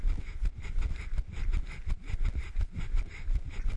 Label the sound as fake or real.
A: real